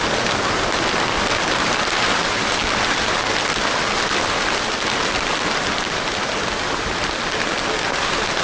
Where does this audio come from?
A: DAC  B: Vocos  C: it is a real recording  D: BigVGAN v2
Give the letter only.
C